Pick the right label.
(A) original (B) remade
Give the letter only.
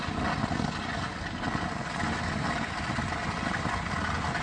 A